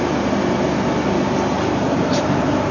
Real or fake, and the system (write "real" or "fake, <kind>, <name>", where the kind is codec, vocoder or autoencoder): real